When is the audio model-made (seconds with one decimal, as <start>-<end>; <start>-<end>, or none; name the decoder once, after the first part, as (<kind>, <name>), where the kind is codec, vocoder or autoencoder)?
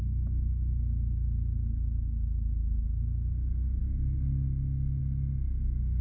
none